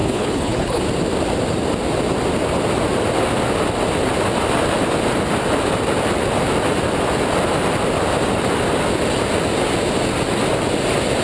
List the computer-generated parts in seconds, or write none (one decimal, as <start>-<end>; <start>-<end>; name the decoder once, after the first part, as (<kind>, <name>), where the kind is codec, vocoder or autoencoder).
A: 0.0-0.8 (codec, HILCodec)